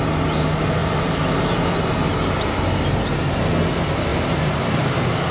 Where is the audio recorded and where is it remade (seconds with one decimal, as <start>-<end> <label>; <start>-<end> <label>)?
0.0-0.8 recorded; 0.8-3.3 remade; 3.3-4.1 recorded; 4.1-5.3 remade